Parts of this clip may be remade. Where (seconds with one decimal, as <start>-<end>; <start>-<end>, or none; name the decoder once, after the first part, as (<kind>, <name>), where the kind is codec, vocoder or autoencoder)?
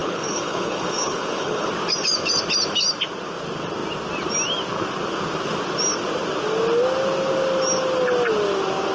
0.0-1.7 (codec, HILCodec)